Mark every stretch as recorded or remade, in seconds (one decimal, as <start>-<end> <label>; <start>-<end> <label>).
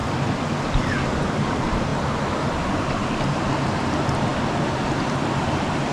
0.0-5.9 recorded